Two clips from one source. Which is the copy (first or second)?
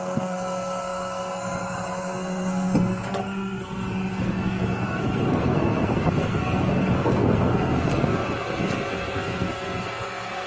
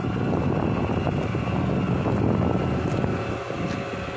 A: first